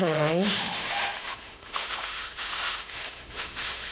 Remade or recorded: remade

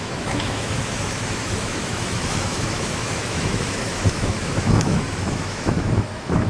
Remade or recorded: remade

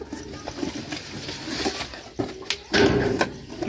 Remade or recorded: recorded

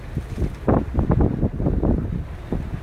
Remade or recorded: recorded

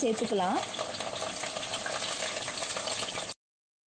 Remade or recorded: recorded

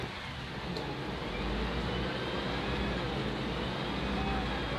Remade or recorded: recorded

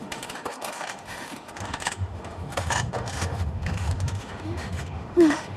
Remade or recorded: remade